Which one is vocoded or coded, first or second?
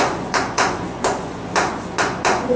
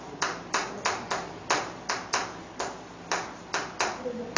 first